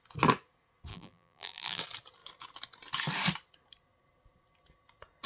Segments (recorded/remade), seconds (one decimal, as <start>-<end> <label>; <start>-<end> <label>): 0.0-0.9 recorded; 0.9-1.8 remade; 1.8-5.3 recorded

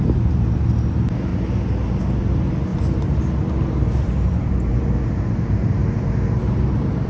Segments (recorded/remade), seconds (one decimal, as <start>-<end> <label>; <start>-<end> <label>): 0.0-1.3 recorded; 1.3-2.0 remade; 2.0-2.7 recorded; 2.7-7.1 remade

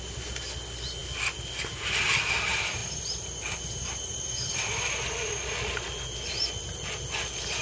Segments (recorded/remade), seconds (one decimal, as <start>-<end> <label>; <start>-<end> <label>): 0.0-7.6 recorded

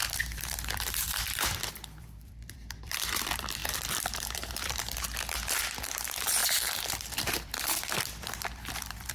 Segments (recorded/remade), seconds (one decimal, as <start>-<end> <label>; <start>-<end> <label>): 0.0-9.1 remade

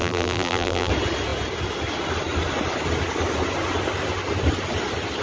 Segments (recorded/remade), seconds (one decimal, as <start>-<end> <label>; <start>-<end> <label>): 0.0-0.9 remade; 0.9-5.2 recorded

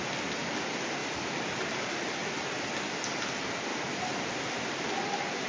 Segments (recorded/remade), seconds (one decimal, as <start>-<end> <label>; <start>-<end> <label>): 0.0-3.7 recorded; 3.7-4.2 remade; 4.2-5.5 recorded

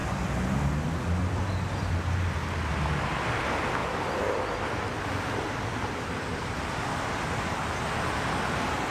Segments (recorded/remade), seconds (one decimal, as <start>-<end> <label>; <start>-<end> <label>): 0.0-3.8 recorded; 3.8-6.8 remade; 6.8-8.9 recorded

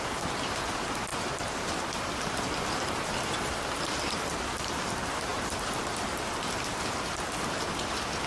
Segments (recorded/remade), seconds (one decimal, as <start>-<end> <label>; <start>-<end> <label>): 0.0-5.3 recorded; 5.3-5.8 remade; 5.8-8.3 recorded